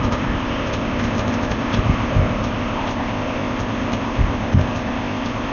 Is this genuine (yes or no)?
no